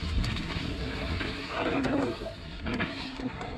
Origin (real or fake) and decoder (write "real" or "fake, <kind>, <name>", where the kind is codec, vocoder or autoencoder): fake, codec, SNAC